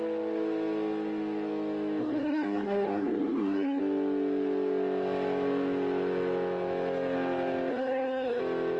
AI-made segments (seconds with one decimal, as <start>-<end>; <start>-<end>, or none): 2.0-3.8; 7.7-8.4